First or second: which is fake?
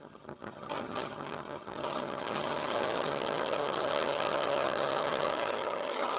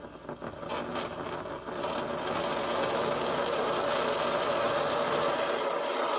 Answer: first